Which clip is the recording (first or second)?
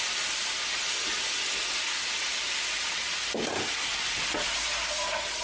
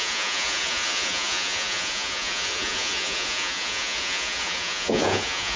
first